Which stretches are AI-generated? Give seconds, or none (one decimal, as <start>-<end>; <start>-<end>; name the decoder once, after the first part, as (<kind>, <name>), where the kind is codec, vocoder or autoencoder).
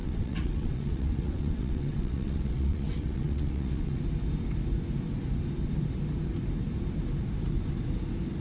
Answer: 0.0-4.0 (vocoder, WaveNeXt)